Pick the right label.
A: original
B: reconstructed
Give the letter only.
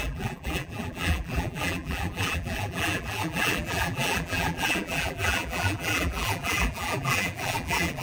B